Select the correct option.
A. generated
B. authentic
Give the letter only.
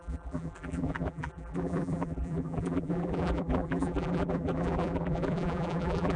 A